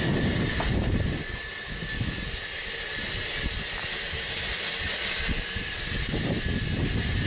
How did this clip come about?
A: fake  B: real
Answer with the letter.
B